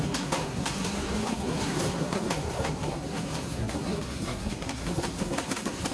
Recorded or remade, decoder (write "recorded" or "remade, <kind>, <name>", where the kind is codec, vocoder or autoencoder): remade, codec, SNAC